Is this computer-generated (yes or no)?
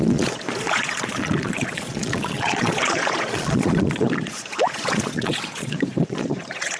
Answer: yes